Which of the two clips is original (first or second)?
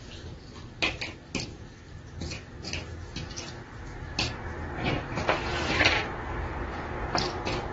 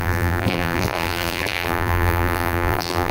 first